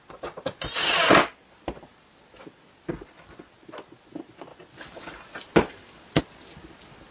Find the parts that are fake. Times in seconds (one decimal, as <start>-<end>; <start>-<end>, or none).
none